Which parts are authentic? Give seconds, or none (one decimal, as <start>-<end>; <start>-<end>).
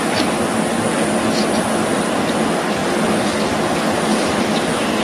0.0-5.0